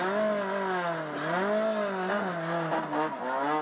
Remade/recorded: recorded